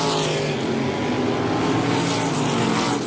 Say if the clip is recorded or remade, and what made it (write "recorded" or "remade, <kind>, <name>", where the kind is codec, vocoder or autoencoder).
recorded